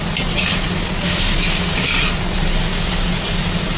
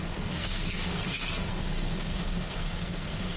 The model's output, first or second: second